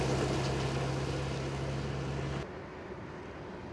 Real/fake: real